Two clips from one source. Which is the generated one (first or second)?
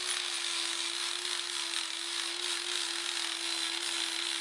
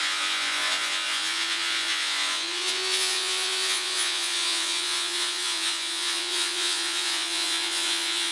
second